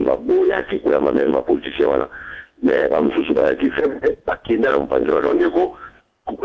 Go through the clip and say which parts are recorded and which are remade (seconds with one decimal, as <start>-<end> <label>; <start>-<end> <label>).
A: 0.0-3.8 remade; 3.8-4.7 recorded; 4.7-6.0 remade; 6.0-6.4 recorded